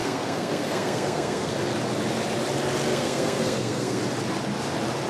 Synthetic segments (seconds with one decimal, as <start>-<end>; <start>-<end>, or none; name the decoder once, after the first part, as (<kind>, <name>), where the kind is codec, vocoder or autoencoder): 0.0-1.5 (codec, SNAC); 2.9-4.0